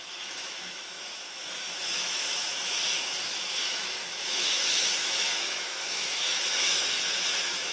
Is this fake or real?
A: fake